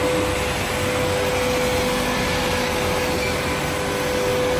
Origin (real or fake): real